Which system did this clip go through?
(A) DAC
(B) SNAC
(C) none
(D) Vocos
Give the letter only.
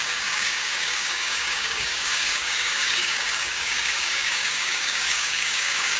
A